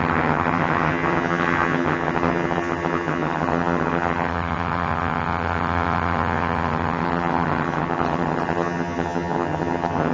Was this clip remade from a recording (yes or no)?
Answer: yes